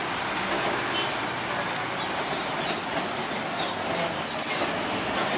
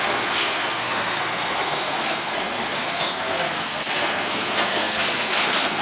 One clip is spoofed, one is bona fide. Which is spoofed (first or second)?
second